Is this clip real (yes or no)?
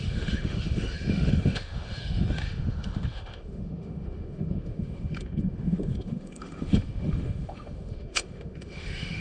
no